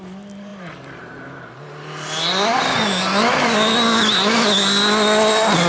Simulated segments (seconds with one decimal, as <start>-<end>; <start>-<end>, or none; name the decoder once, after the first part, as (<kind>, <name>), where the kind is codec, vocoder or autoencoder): none